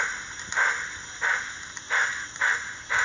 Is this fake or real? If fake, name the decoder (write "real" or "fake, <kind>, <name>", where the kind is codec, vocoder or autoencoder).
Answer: real